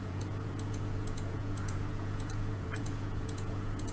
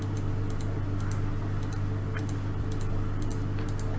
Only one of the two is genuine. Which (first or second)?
second